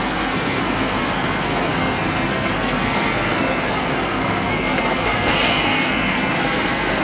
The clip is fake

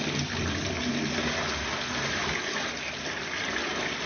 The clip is real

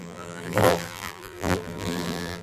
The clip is fake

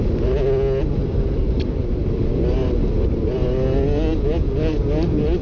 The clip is real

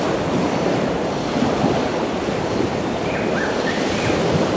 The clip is fake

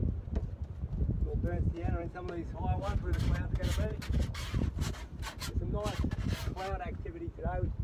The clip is real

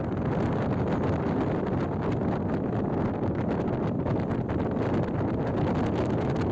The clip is real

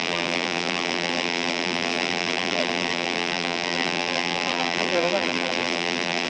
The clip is fake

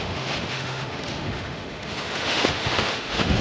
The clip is fake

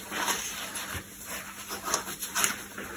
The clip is fake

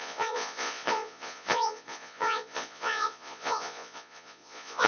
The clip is fake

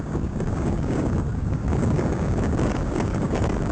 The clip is fake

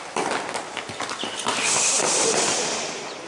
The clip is fake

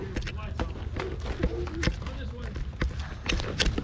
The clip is real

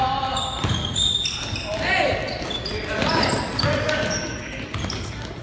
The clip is real